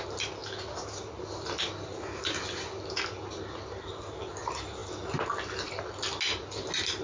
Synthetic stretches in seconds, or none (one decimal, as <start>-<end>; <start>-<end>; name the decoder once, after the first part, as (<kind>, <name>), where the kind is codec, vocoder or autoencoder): none